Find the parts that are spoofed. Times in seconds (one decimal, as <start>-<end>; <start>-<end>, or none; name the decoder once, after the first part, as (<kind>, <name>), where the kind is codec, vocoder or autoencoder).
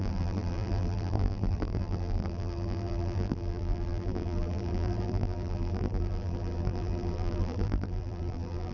0.0-8.7 (vocoder, BigVGAN v2)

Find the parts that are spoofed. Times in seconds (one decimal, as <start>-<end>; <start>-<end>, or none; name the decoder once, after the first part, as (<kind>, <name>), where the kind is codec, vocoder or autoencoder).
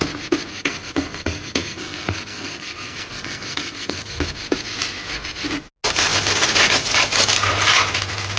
0.5-4.2 (codec, SNAC)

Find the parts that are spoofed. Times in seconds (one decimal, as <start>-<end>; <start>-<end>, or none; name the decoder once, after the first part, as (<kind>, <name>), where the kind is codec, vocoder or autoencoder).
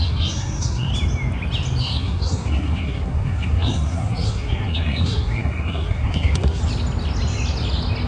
0.0-0.9 (codec, SNAC); 1.8-6.6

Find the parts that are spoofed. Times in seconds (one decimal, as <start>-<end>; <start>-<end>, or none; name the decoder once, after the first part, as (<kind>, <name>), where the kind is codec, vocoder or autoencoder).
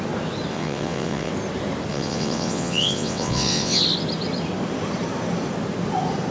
0.5-1.3 (vocoder, WaveNeXt); 1.9-3.8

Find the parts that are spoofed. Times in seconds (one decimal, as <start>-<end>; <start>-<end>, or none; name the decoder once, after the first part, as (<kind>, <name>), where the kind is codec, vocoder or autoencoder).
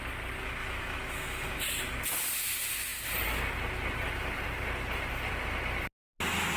0.6-1.7 (autoencoder, DAC-VAE)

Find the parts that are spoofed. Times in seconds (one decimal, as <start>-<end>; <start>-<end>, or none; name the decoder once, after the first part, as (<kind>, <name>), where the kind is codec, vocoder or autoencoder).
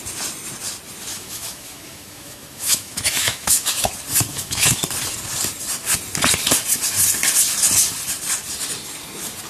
1.1-3.9 (autoencoder, DAC-VAE); 4.3-4.8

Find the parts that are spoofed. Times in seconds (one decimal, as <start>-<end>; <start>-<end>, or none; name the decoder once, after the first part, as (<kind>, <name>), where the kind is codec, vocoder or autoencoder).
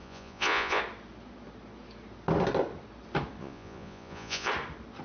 0.0-0.8 (vocoder, Vocos); 3.4-4.5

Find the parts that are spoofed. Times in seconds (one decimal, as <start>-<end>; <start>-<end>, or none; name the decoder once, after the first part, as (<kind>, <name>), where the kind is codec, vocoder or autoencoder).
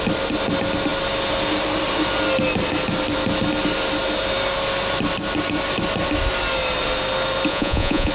7.5-8.1 (vocoder, Vocos)